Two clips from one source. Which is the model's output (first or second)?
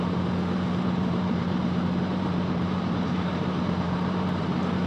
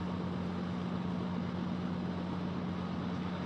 first